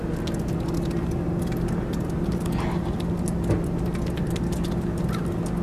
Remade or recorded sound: recorded